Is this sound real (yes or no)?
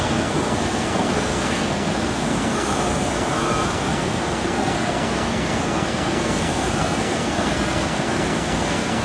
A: no